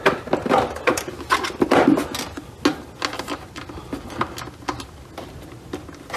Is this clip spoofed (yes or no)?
no